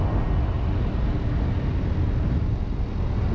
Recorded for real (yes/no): yes